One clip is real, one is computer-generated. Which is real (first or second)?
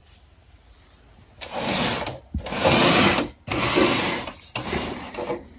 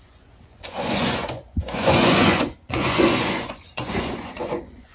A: first